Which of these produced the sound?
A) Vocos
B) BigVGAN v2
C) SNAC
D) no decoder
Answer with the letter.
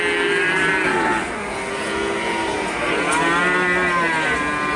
D